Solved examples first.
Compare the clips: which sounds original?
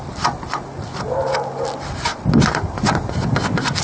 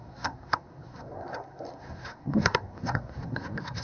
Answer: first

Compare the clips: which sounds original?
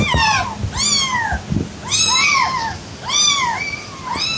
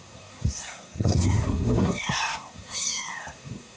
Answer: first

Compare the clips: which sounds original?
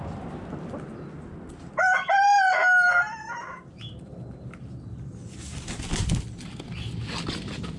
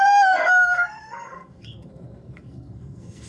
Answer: first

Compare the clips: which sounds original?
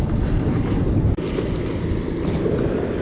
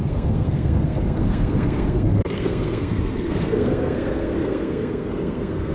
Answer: first